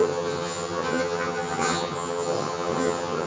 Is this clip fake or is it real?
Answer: fake